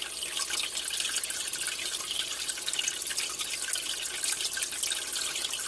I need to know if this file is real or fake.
real